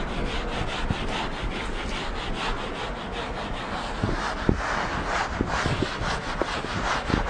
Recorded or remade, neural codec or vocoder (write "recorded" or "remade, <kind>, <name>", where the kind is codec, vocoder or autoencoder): recorded